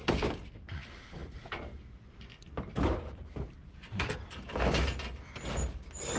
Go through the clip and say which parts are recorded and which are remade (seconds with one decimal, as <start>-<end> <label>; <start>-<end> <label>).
0.0-6.2 recorded